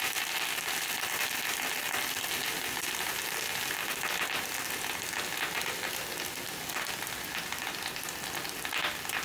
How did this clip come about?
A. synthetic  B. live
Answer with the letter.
B